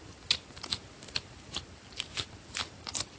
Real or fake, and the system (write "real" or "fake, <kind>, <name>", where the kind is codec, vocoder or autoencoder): real